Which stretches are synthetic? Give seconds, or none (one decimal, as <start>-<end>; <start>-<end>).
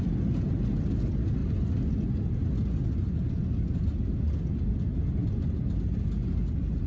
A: none